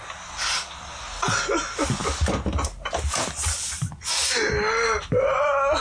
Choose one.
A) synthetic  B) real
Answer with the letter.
B